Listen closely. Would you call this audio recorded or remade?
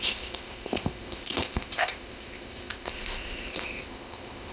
remade